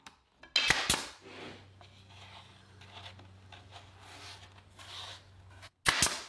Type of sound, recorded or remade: recorded